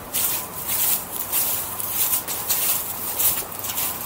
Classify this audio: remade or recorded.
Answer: remade